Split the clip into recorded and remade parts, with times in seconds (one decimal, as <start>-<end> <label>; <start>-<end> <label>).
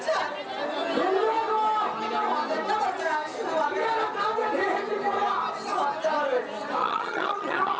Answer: 0.0-6.8 recorded; 6.8-7.8 remade